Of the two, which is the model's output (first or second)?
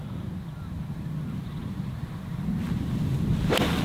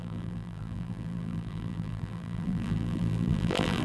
second